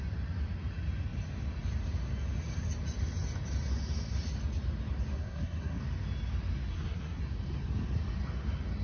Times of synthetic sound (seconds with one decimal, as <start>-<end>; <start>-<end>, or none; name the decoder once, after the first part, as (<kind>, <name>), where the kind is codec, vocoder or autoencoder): 5.1-5.8 (codec, SNAC); 6.7-7.2

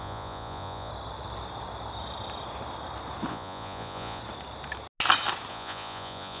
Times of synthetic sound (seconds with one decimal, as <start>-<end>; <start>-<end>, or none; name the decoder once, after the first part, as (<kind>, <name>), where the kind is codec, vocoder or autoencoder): 0.0-0.9 (vocoder, Vocos); 3.3-4.2; 5.5-6.4

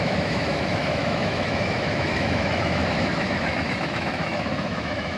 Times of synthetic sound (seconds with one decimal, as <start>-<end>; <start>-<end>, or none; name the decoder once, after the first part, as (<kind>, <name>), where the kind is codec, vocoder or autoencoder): 0.0-5.2 (autoencoder, DAC-VAE)

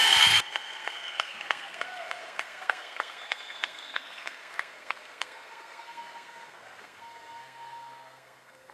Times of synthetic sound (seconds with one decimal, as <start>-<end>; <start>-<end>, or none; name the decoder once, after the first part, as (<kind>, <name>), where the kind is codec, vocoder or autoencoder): 0.0-8.7 (codec, SNAC)

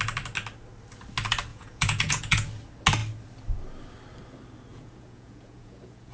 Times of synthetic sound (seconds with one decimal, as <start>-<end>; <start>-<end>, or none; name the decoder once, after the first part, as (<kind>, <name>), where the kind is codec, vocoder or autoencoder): 1.5-2.5 (vocoder, Vocos); 4.7-6.1

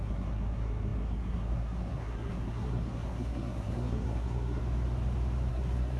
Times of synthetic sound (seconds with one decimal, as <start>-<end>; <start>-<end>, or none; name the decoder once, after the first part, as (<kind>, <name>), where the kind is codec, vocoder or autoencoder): 0.0-4.6 (codec, SNAC); 5.5-6.0

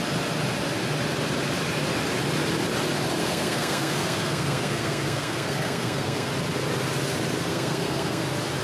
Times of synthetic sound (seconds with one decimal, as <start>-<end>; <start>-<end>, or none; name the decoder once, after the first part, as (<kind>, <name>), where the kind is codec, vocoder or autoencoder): 3.2-6.3 (codec, SNAC); 7.5-8.2

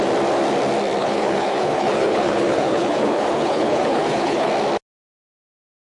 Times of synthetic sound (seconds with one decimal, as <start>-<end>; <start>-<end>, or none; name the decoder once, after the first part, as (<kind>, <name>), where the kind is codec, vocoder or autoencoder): 1.0-4.5 (codec, HILCodec)